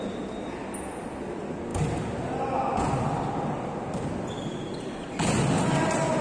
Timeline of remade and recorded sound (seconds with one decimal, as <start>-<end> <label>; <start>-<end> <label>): 0.0-6.2 recorded